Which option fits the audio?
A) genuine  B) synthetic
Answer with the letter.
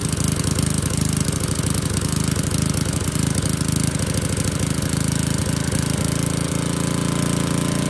A